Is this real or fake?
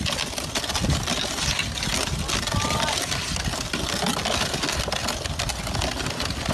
real